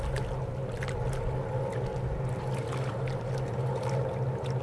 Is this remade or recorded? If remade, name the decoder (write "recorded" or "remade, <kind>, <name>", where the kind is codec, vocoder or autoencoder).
recorded